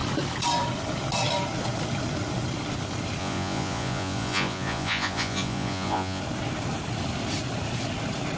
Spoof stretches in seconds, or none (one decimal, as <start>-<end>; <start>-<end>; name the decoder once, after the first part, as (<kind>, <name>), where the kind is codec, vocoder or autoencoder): 3.2-6.2 (vocoder, Vocos)